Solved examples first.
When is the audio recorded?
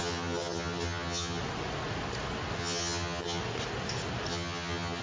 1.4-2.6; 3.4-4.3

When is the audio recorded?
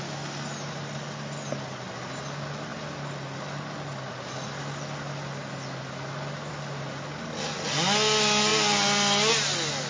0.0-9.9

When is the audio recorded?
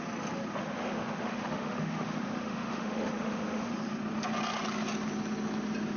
0.0-0.6; 3.7-6.0